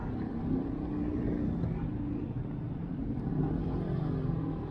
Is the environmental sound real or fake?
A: real